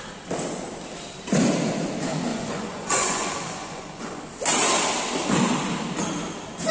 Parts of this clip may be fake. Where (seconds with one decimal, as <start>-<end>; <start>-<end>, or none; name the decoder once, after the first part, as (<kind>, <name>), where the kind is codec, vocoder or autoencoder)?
2.3-4.2 (vocoder, Vocos)

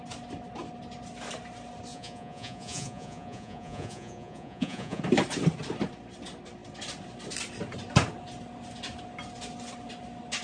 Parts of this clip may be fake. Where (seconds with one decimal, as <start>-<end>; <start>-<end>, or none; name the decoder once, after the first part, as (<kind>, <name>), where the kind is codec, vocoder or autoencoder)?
1.9-5.0 (vocoder, Vocos)

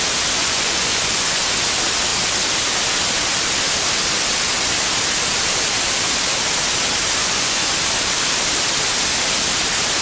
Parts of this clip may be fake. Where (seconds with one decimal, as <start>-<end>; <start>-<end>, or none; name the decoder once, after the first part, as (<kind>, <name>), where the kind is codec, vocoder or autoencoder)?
0.4-1.4 (vocoder, Vocos); 7.2-7.7

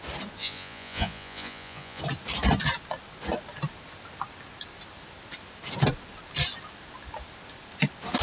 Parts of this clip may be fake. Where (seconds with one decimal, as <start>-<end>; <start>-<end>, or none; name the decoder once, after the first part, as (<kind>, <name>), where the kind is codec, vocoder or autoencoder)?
0.4-2.0 (vocoder, Vocos)

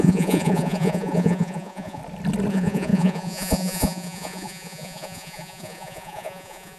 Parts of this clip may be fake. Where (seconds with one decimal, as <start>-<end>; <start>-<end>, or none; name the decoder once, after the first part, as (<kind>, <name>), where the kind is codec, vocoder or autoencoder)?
0.0-2.0 (vocoder, Vocos); 2.5-6.8

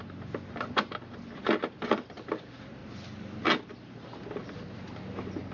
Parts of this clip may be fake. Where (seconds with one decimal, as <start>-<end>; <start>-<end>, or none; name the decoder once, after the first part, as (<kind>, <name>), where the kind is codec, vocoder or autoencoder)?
none

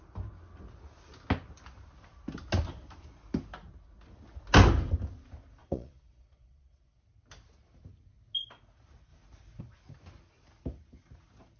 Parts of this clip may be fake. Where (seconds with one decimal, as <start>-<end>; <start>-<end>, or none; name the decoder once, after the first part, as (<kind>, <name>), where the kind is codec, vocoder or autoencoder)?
5.6-7.0 (vocoder, Vocos)